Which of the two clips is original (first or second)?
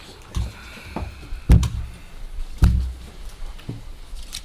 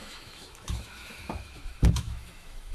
first